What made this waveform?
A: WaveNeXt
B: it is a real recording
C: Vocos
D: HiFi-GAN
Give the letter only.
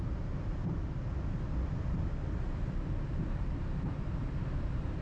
B